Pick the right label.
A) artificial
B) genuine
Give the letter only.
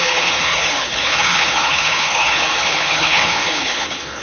A